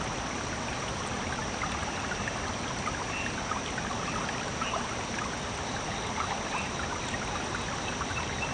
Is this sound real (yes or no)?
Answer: yes